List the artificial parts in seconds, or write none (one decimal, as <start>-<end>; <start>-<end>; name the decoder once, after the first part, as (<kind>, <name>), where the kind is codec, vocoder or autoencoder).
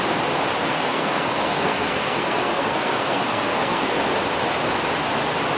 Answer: 0.6-4.0 (codec, SNAC)